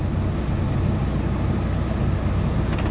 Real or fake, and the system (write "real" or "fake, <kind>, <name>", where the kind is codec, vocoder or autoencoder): real